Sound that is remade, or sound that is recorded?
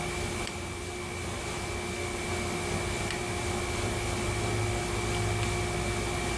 recorded